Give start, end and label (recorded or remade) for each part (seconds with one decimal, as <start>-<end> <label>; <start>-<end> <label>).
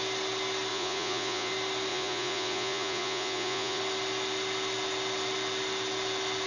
0.0-0.7 recorded; 0.7-1.5 remade; 1.5-1.9 recorded; 1.9-3.8 remade; 3.8-6.5 recorded